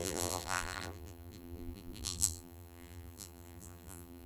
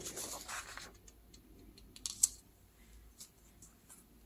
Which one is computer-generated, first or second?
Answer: first